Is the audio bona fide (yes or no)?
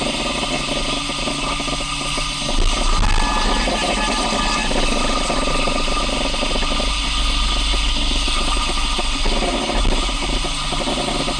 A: yes